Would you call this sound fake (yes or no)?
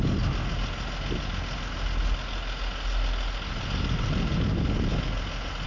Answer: no